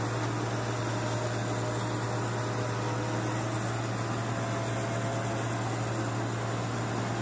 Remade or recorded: recorded